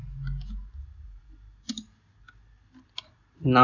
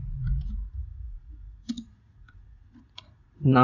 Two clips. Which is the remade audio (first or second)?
second